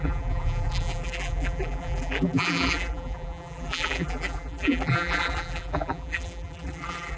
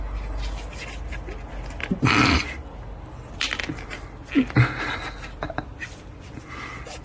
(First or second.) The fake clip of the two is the first